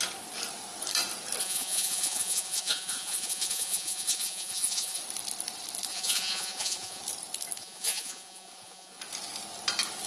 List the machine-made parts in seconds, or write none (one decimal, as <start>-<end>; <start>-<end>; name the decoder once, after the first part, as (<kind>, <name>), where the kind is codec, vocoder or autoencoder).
1.4-5.0 (vocoder, Vocos); 5.9-7.0; 7.6-9.0